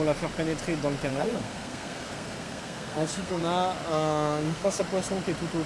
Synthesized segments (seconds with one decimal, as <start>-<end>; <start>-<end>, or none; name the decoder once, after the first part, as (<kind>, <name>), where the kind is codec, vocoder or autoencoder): 1.1-3.4 (codec, SNAC); 3.9-4.8